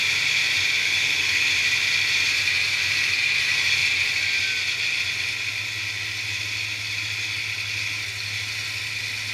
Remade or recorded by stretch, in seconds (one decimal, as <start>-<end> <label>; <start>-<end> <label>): 0.0-0.8 recorded; 0.8-1.4 remade; 1.4-9.3 recorded